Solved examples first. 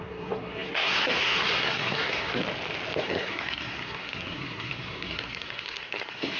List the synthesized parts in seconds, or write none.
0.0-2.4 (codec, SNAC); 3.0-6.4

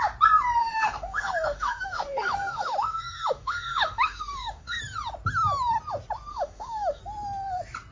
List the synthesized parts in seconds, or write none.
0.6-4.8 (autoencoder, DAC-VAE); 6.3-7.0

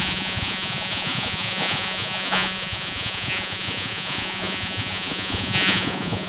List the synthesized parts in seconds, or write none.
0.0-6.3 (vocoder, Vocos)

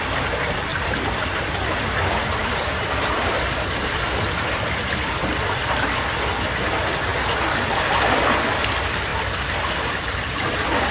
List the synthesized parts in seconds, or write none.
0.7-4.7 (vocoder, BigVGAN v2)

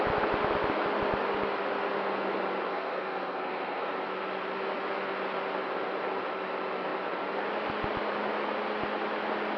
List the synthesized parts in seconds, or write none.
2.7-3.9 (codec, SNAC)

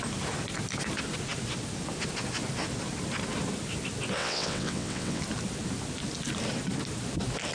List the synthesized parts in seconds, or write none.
4.2-5.2 (vocoder, WaveNeXt)